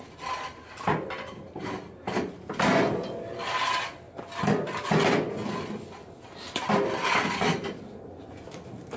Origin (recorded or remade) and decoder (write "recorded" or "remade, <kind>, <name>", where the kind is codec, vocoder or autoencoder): recorded